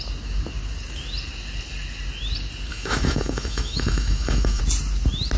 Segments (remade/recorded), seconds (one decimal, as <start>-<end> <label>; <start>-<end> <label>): 0.0-2.7 recorded; 2.7-4.6 remade; 4.6-5.4 recorded